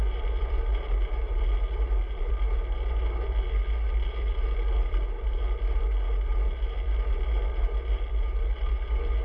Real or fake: real